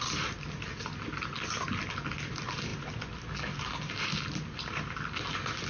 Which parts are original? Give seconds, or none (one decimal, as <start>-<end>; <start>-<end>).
0.0-5.7